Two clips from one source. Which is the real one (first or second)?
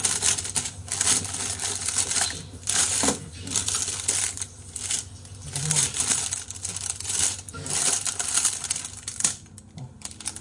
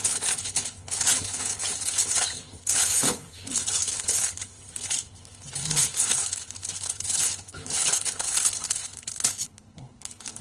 first